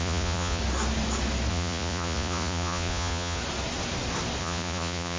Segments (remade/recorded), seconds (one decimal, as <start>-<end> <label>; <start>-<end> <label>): 0.0-0.6 remade; 0.6-1.5 recorded; 1.5-3.4 remade; 3.4-4.4 recorded; 4.4-5.2 remade